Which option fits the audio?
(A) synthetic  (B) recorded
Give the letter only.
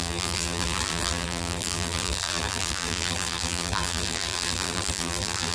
A